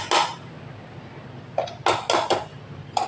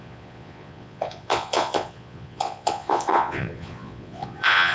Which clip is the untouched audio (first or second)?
first